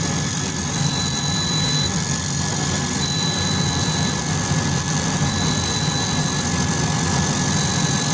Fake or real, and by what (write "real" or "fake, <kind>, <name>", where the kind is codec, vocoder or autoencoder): fake, vocoder, BigVGAN v2